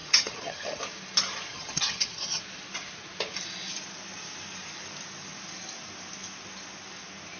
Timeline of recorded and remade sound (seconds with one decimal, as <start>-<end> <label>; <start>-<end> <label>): 0.0-0.8 remade; 0.8-1.5 recorded; 1.5-2.4 remade; 2.4-7.4 recorded